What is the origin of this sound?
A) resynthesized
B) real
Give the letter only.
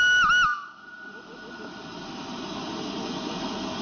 B